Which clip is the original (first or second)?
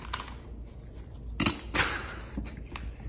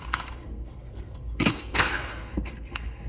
first